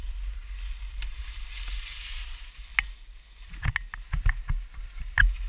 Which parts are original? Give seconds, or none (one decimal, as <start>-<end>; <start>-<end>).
0.0-5.5

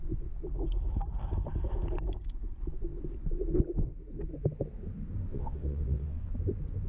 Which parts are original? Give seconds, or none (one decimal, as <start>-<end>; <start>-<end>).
0.0-5.3; 6.3-6.9

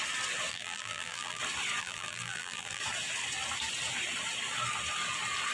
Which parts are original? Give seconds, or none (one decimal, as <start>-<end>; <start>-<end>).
0.0-0.5; 1.4-1.8; 2.8-5.5

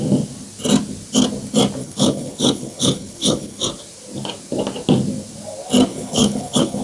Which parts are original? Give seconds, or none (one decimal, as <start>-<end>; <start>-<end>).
0.0-1.8; 3.6-5.9

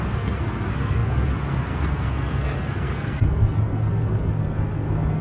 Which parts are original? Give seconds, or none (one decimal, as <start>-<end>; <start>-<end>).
none